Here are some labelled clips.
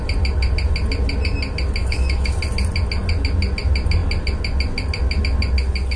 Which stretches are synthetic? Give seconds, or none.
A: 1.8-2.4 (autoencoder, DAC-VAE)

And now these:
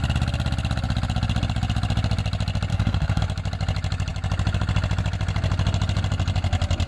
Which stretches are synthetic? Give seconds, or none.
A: 2.7-3.2 (codec, SNAC)

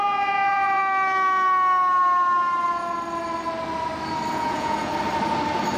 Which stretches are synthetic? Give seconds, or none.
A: 0.0-0.8 (vocoder, Vocos); 4.3-4.9

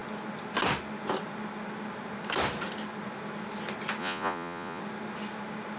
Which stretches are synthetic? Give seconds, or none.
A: 4.0-4.8 (vocoder, Vocos)

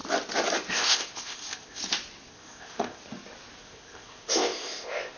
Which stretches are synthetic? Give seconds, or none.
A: 0.7-1.8 (codec, ZipCodec); 2.3-3.0; 3.6-5.2

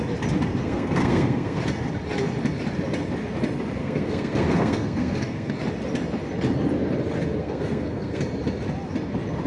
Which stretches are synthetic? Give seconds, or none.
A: 0.6-1.6 (codec, SNAC); 3.8-5.5; 7.4-8.2

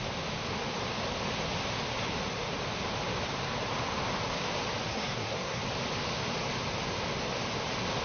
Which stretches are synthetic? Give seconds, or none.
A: 4.9-5.6 (codec, SNAC)

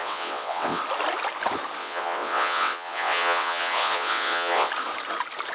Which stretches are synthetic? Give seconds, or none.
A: 0.0-0.8 (vocoder, WaveNeXt); 1.8-4.7